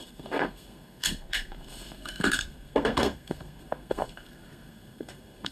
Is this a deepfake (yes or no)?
yes